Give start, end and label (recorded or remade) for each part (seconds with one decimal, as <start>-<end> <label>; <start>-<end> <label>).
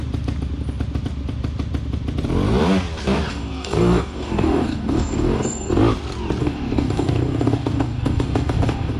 0.0-3.3 recorded; 3.3-5.7 remade; 5.7-6.4 recorded; 6.4-9.0 remade